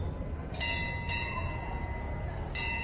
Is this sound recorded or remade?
recorded